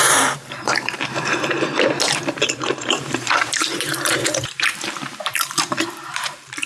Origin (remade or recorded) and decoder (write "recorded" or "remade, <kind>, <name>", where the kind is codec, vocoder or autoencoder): remade, vocoder, BigVGAN v2